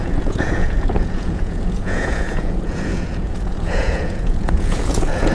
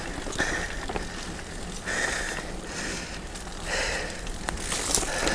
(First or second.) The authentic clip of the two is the second